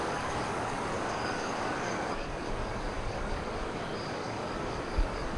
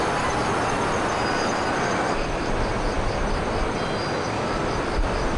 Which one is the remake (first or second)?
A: first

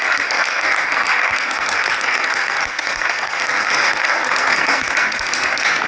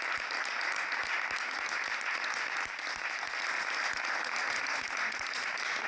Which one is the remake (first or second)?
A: first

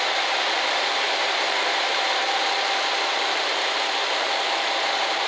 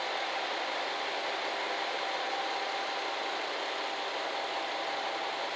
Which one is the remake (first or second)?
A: first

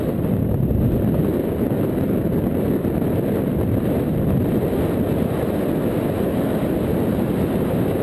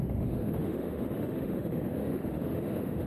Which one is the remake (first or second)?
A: second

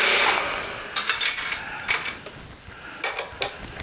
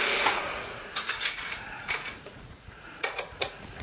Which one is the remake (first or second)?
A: second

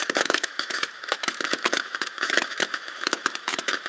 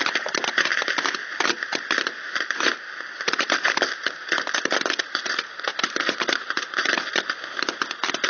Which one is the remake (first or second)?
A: first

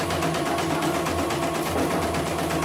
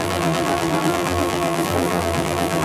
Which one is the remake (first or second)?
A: second